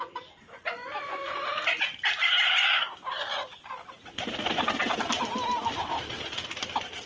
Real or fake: real